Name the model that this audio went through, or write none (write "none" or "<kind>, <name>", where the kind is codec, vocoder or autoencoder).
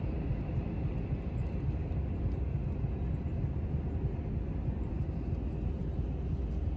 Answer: none